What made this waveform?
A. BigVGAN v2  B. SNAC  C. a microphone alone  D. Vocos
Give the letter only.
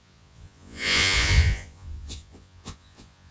D